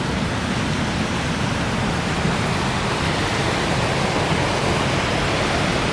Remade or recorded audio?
recorded